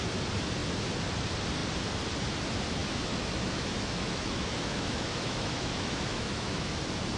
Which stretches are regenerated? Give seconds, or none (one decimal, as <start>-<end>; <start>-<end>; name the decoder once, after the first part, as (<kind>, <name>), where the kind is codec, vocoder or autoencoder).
2.8-6.8 (autoencoder, DAC-VAE)